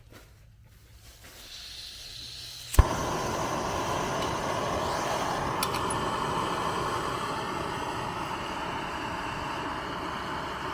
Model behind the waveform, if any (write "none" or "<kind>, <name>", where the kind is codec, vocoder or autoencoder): none